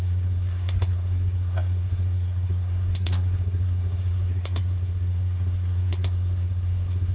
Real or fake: fake